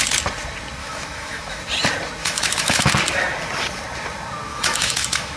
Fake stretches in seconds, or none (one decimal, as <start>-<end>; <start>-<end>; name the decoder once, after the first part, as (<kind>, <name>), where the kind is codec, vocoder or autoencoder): 0.8-1.6 (autoencoder, DAC-VAE); 2.2-2.9; 4.5-5.4